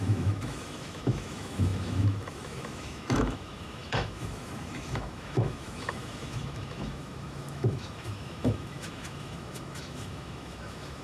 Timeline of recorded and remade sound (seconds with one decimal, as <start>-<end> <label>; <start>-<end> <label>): 0.0-11.0 remade